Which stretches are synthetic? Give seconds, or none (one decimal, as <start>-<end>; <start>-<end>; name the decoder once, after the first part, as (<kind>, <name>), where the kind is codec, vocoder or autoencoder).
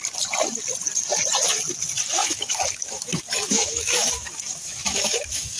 2.2-5.6 (autoencoder, DAC-VAE)